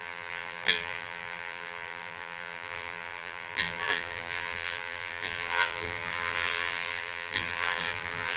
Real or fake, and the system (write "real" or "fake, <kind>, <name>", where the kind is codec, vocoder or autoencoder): fake, vocoder, BigVGAN v2